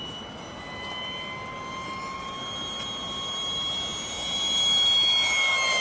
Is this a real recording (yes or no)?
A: yes